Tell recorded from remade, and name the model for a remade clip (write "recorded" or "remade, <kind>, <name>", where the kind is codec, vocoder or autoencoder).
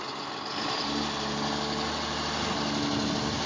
recorded